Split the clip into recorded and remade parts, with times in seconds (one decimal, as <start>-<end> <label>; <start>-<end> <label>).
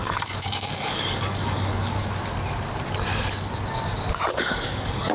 0.0-2.0 remade; 2.0-4.3 recorded; 4.3-5.1 remade